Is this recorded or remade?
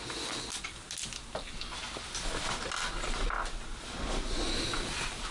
recorded